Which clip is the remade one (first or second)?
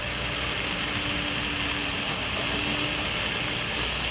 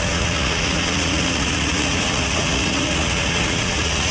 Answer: second